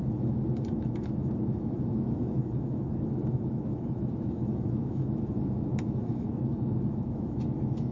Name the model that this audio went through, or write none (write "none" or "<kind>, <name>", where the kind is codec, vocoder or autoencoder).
autoencoder, DAC-VAE